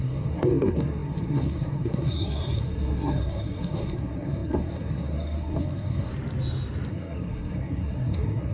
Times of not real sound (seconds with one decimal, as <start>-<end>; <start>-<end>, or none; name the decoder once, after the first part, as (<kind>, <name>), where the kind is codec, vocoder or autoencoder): 0.0-6.1 (codec, SNAC); 6.9-8.5